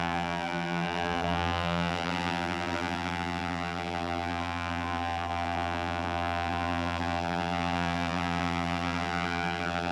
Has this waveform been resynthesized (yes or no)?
yes